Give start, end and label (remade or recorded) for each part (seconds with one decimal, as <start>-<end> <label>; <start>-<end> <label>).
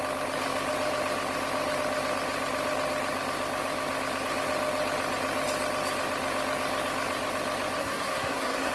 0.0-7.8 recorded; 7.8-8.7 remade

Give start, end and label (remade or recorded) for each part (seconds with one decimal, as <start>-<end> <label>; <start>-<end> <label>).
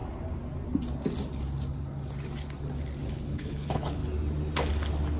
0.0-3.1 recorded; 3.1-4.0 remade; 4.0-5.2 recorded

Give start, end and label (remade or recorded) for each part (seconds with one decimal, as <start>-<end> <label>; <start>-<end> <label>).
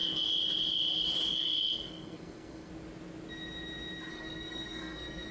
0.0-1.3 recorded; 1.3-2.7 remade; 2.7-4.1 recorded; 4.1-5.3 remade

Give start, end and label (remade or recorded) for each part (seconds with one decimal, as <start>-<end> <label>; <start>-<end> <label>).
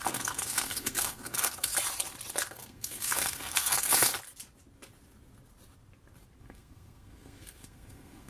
0.0-1.7 remade; 1.7-2.5 recorded; 2.5-4.1 remade; 4.1-6.4 recorded; 6.4-8.3 remade